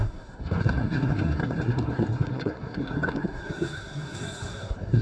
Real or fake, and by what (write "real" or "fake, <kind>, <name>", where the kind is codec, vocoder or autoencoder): fake, codec, SNAC